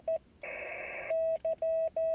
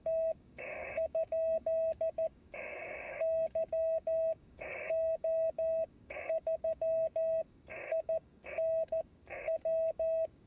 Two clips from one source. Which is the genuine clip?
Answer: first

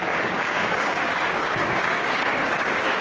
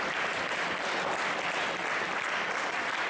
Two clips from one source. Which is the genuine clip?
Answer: second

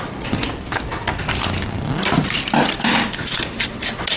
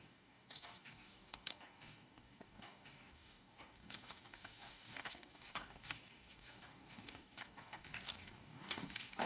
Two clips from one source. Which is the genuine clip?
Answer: first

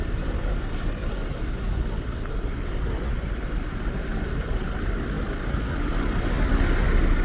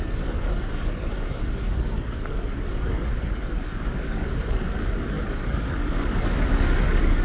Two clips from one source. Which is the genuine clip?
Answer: first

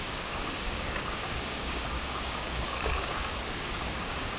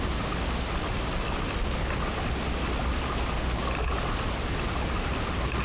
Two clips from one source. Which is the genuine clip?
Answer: second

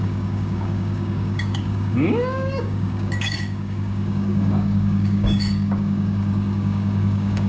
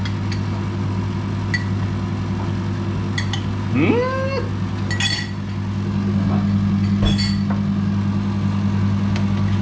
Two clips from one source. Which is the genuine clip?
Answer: second